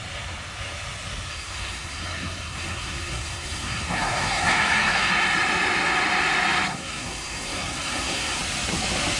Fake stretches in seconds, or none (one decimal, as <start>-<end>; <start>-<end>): 1.3-5.1; 6.7-8.4